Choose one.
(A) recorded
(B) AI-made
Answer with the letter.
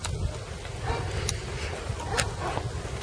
A